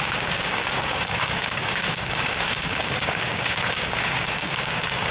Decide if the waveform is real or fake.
fake